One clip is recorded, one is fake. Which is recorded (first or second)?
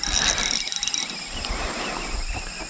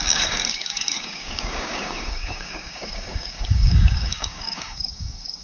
first